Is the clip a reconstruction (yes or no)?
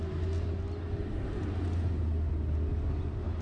no